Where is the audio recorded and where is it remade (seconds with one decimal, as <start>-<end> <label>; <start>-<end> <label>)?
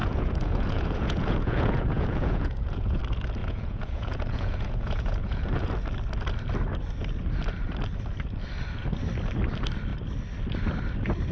0.0-3.0 remade; 3.0-3.4 recorded; 3.4-5.7 remade; 5.7-11.3 recorded